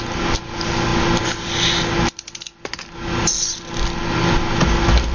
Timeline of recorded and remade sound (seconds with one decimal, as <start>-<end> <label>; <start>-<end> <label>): 0.0-5.1 recorded